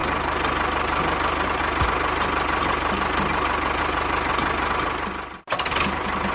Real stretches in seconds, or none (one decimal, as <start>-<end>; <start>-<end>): 0.0-6.3